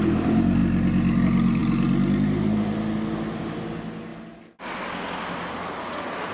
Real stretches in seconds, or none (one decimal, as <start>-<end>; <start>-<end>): 0.0-6.3